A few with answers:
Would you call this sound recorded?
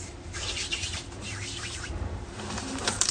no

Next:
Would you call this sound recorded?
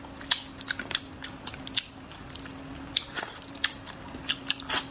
yes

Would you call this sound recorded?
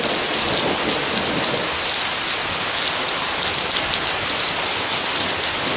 yes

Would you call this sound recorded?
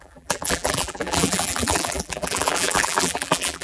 no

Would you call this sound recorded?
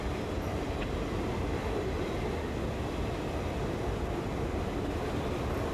no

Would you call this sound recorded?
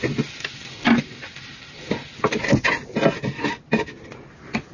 yes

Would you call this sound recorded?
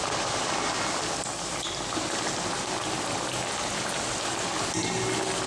yes